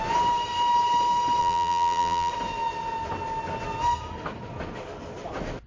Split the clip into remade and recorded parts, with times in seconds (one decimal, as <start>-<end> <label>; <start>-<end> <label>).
0.0-1.4 recorded; 1.4-2.3 remade; 2.3-5.7 recorded